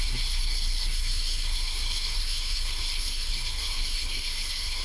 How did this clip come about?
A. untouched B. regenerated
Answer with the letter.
B